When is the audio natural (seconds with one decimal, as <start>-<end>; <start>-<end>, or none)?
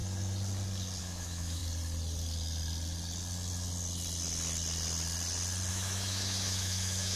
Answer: 0.0-1.0; 1.6-5.7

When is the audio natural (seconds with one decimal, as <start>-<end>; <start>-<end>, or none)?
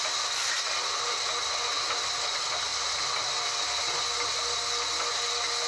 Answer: 0.0-5.7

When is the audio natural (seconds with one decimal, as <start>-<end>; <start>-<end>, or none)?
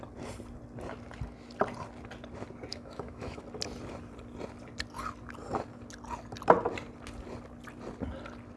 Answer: 0.0-2.7; 3.4-8.6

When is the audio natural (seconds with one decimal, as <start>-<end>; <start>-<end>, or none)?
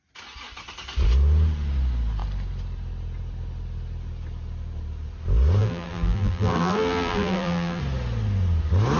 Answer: 0.0-5.6; 7.8-9.0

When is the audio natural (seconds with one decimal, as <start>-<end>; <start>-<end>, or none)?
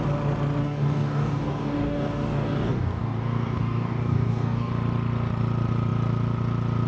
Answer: 0.0-0.6; 4.7-6.9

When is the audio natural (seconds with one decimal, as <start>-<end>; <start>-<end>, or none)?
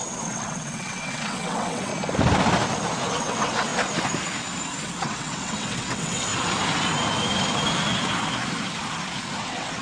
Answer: 1.9-3.1; 3.7-4.8; 6.3-9.4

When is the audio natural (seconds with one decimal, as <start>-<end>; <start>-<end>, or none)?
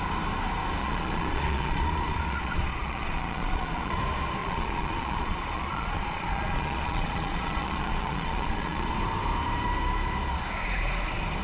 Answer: 0.0-0.8; 4.0-4.4; 8.9-11.4